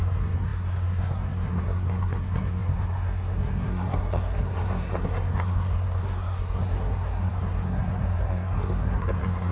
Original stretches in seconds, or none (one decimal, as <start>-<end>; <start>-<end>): none